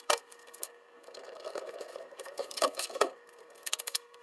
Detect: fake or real fake